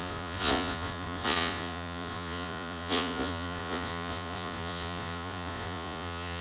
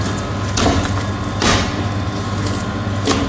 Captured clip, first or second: second